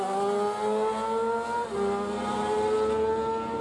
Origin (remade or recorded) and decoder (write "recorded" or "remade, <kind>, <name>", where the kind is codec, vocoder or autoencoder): recorded